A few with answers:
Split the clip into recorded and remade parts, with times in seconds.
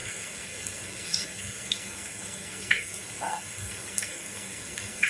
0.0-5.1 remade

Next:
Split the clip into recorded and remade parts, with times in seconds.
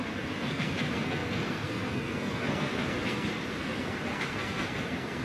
0.0-5.2 remade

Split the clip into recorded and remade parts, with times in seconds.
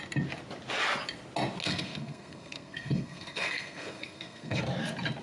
0.0-1.6 recorded; 1.6-4.6 remade; 4.6-5.2 recorded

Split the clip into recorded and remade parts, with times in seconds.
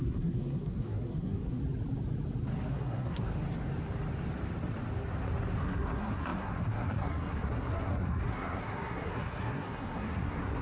0.0-1.6 remade; 1.6-2.7 recorded; 2.7-3.3 remade; 3.3-5.6 recorded; 5.6-10.6 remade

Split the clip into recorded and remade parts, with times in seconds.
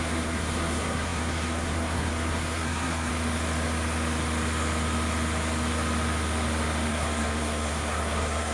0.0-3.1 remade; 3.1-6.9 recorded; 6.9-8.5 remade